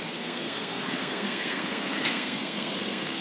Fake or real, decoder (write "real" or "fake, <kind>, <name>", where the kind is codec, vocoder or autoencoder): fake, codec, SNAC